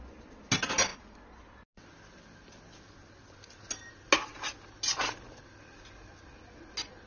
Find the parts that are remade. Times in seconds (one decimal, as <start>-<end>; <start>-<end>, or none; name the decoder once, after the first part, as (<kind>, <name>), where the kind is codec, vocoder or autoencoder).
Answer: none